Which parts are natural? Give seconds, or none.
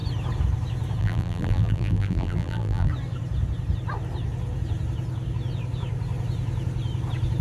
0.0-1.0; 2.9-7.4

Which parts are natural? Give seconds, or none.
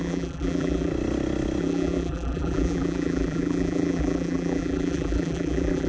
0.9-1.6